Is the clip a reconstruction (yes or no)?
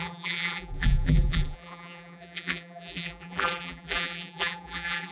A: yes